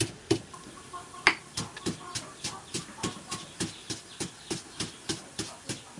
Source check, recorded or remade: recorded